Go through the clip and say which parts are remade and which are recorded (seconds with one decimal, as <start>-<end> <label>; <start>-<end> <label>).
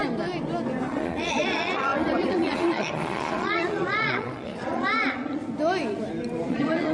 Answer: 0.0-0.9 recorded; 0.9-5.4 remade; 5.4-6.5 recorded; 6.5-6.9 remade